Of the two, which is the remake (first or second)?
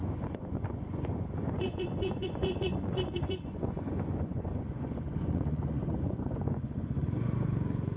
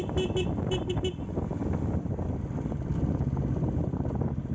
first